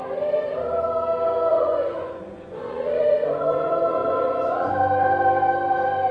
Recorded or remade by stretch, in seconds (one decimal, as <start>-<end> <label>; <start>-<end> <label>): 0.0-1.5 recorded; 1.5-4.7 remade; 4.7-6.1 recorded